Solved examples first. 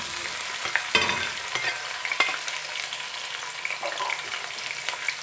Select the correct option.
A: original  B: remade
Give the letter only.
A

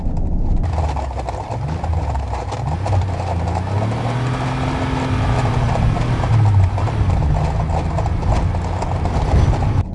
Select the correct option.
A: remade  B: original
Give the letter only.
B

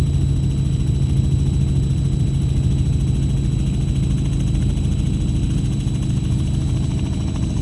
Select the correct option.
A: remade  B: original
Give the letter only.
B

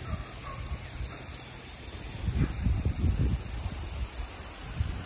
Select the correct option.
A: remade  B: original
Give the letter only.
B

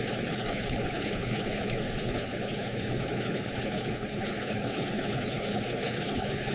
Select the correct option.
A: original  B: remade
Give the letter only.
B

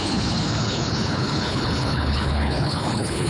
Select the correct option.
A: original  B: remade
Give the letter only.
B